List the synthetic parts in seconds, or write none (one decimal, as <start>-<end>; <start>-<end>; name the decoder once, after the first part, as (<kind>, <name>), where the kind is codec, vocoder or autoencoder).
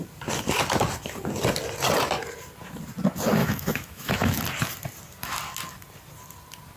3.4-4.4 (autoencoder, DAC-VAE)